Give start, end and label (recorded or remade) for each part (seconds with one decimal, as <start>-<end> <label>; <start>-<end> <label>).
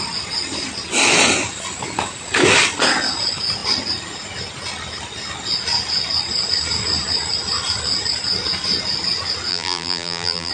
0.0-9.5 recorded; 9.5-10.5 remade